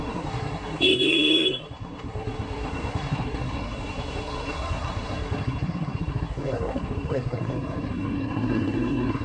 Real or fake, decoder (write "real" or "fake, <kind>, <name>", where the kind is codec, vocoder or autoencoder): fake, codec, SNAC